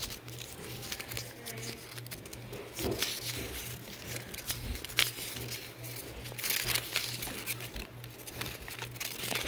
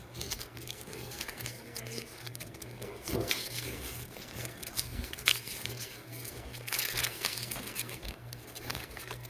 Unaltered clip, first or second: first